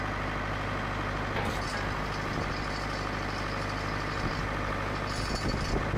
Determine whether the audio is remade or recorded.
recorded